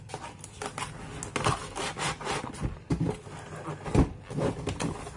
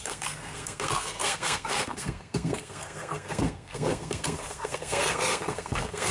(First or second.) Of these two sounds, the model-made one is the second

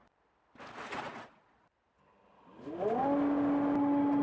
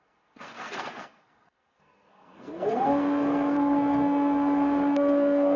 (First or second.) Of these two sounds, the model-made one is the second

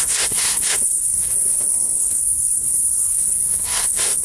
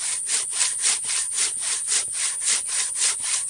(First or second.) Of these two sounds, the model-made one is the first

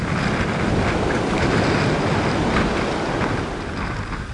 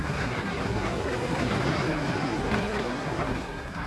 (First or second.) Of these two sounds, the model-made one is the second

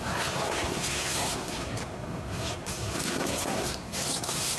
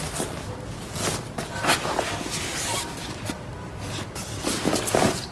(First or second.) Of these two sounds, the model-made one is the first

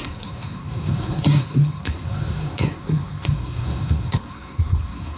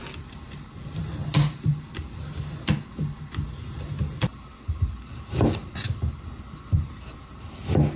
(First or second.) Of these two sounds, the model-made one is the first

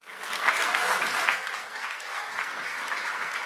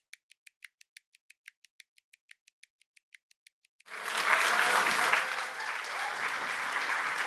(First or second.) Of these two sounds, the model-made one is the first